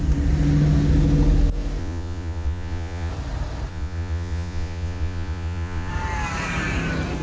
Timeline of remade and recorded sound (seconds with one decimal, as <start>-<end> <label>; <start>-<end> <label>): 0.0-1.8 recorded; 1.8-3.1 remade; 3.1-3.7 recorded; 3.7-5.9 remade; 5.9-7.2 recorded